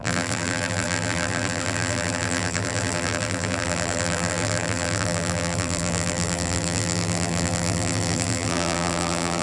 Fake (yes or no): yes